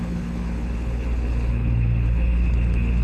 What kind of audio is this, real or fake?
fake